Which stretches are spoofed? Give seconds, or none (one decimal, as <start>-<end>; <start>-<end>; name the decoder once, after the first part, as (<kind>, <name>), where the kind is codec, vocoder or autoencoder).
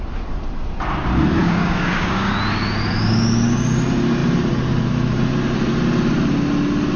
1.4-2.3 (codec, DAC)